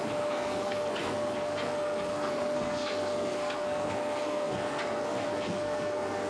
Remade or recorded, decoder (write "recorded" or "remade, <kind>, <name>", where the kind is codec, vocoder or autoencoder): remade, codec, SNAC